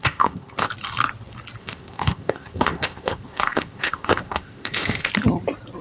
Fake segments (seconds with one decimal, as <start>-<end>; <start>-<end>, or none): 0.0-0.7; 1.6-5.1